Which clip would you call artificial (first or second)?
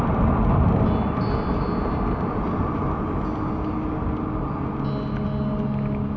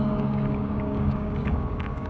second